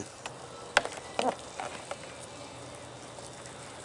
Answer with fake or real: real